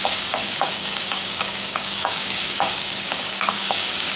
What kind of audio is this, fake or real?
fake